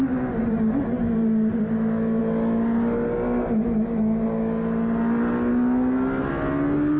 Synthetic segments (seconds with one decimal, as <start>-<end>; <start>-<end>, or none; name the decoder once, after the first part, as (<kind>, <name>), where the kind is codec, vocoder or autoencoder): none